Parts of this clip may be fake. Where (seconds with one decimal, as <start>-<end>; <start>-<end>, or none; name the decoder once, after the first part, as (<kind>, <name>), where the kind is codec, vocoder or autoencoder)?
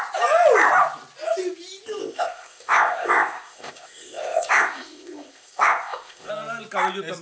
2.0-6.3 (codec, ZipCodec)